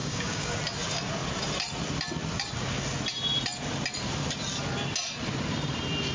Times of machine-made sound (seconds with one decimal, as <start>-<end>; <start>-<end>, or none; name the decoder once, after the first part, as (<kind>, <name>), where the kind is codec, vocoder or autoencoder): 0.0-0.6 (codec, DAC)